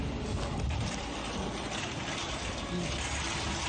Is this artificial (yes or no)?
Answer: no